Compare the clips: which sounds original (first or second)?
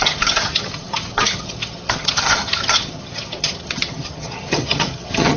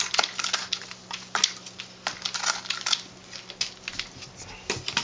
second